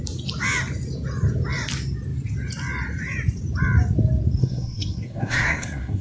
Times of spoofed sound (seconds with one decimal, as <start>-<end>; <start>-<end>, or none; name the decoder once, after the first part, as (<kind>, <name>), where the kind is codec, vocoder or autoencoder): 4.4-6.0 (codec, SNAC)